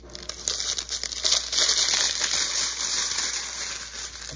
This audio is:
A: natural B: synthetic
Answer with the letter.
A